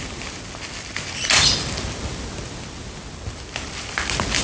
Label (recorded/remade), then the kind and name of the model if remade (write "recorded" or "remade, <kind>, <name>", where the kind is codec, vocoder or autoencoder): recorded